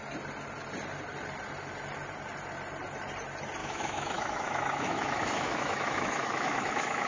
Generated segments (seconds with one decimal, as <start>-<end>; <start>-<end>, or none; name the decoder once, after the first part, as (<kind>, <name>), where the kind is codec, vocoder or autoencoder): 3.6-7.1 (autoencoder, DAC-VAE)